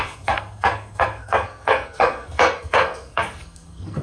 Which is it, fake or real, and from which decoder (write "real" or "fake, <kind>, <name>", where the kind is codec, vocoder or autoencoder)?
fake, codec, SNAC